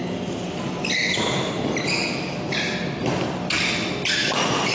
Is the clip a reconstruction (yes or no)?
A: no